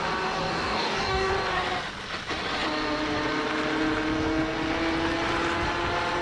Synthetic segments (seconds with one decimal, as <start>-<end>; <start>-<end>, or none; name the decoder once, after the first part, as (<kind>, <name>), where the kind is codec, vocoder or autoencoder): 0.5-1.3 (codec, DAC)